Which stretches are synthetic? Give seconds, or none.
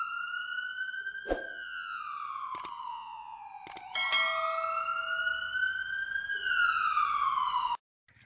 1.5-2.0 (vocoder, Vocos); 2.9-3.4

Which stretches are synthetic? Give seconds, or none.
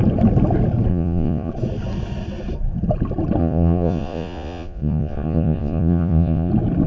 0.9-1.5 (vocoder, Vocos); 3.4-6.5